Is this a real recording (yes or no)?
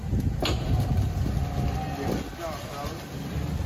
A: yes